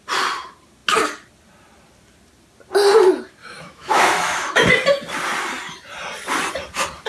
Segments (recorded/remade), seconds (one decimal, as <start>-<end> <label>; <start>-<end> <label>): 0.0-3.4 recorded; 3.4-4.7 remade; 4.7-7.1 recorded